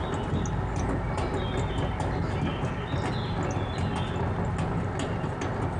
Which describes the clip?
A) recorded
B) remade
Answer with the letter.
A